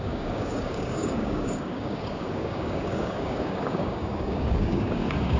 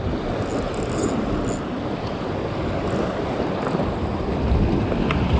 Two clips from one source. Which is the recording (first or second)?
second